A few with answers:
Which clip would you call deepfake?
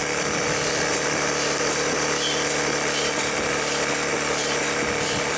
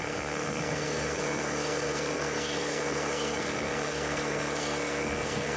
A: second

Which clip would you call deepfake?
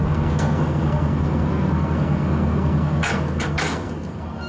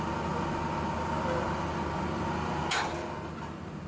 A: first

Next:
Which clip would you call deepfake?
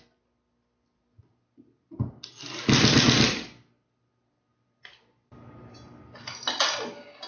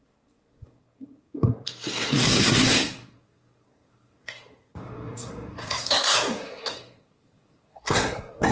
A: second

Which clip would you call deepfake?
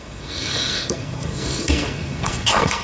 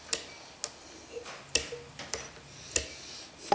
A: first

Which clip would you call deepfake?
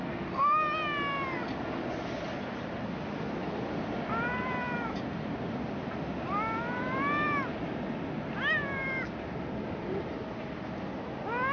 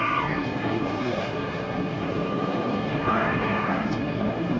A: second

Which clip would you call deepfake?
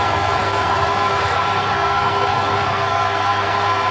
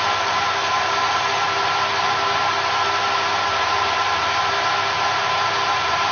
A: first